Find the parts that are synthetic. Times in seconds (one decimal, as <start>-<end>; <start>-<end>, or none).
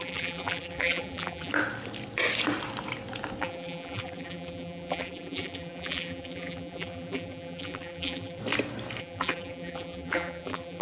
0.0-1.5; 3.4-8.4; 9.0-10.8